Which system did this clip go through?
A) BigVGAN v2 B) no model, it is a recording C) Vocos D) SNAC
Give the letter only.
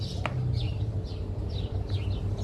B